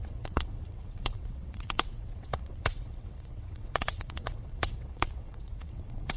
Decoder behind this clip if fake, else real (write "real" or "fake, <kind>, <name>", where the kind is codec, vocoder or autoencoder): fake, vocoder, WaveNeXt